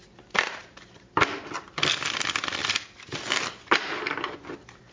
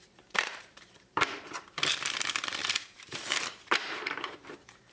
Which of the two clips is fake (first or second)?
second